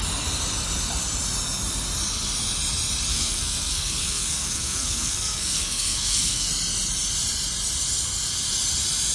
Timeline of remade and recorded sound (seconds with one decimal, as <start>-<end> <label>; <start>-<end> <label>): 0.0-3.1 recorded; 3.1-6.5 remade; 6.5-9.1 recorded